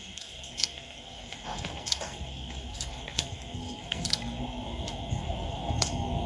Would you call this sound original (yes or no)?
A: no